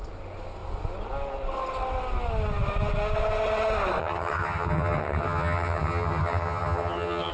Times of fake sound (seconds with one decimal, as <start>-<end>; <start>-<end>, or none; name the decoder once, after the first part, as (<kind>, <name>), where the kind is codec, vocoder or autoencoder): 4.0-7.3 (vocoder, HiFi-GAN)